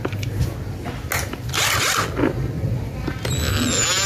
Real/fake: real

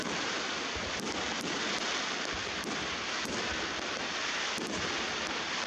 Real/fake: fake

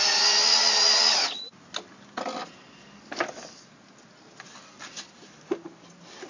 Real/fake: real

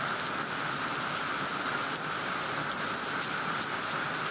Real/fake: real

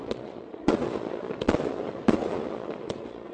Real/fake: fake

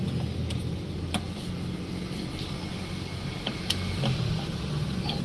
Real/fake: real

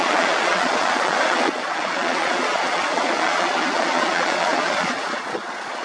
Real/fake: fake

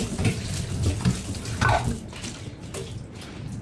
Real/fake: real